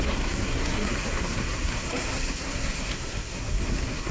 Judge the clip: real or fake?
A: fake